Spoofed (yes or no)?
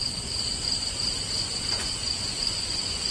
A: yes